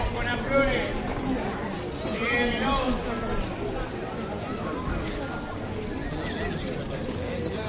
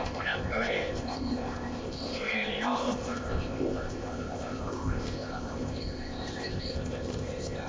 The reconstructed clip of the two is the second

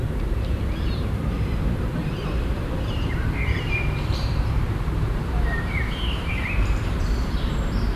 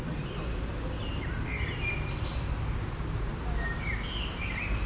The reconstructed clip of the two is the first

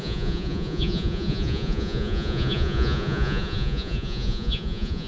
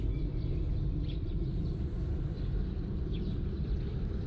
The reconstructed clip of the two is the first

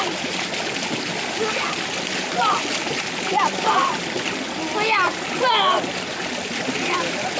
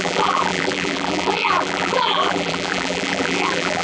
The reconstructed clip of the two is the second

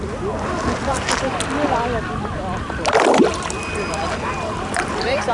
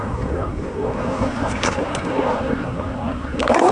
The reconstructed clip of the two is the second